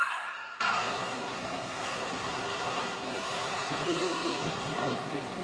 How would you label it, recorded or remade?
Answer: remade